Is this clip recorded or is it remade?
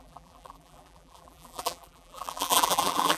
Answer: remade